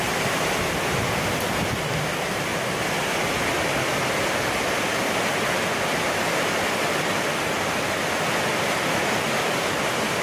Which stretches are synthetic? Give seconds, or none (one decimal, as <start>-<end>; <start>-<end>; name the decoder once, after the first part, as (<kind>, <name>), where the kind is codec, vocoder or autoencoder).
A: none